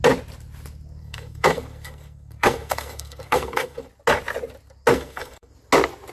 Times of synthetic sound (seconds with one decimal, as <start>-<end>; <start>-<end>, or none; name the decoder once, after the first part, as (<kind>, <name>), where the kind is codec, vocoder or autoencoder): 1.0-3.9 (codec, SNAC); 4.9-5.5